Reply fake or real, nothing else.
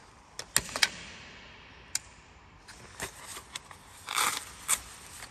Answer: real